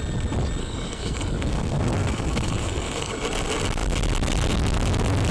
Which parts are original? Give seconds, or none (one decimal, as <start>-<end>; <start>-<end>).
0.0-0.6; 3.1-5.3